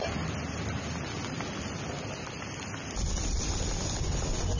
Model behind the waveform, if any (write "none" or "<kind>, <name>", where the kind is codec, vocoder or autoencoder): none